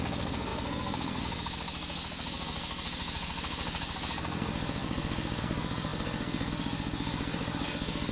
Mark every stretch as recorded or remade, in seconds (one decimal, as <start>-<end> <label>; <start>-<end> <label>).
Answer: 0.0-8.1 remade